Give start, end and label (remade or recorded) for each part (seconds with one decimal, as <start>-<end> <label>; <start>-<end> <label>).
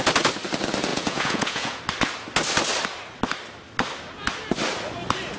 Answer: 0.0-0.9 recorded; 0.9-1.8 remade; 1.8-5.4 recorded